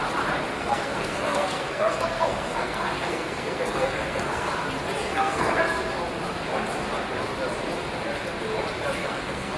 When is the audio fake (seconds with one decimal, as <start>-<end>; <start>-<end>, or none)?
0.5-4.5; 5.1-5.6; 9.0-9.6